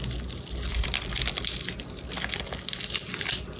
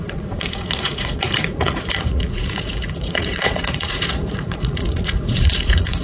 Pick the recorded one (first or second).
first